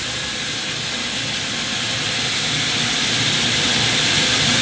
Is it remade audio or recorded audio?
recorded